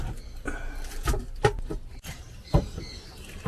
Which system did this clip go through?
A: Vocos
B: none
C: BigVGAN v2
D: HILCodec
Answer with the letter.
B